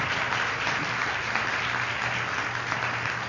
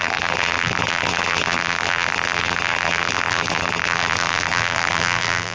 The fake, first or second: second